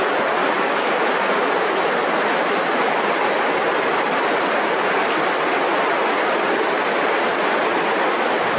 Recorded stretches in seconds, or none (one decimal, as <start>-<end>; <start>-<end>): 2.0-3.4